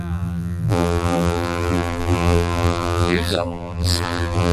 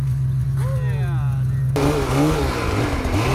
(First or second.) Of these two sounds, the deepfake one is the first